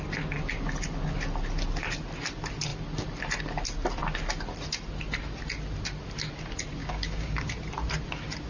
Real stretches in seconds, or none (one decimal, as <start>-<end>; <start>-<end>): 0.0-6.8; 7.5-8.5